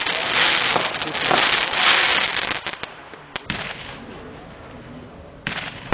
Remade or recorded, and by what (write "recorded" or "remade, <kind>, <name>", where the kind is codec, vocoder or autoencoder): recorded